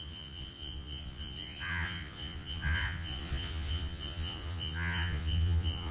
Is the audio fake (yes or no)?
yes